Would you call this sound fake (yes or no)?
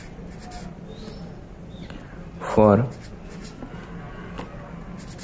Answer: no